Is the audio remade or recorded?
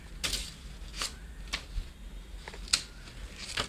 recorded